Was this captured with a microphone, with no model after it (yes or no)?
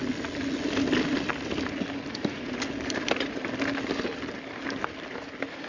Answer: yes